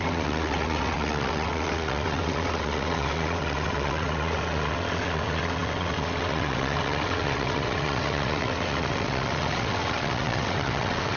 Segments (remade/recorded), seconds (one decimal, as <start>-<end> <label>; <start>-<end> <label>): 0.0-11.2 remade